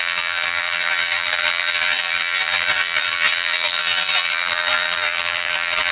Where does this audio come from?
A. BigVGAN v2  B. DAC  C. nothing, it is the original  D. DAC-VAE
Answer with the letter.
A